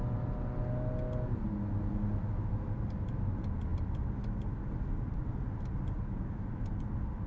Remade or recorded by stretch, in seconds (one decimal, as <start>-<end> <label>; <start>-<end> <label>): 0.0-7.3 recorded